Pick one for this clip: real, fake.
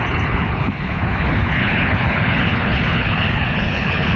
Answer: fake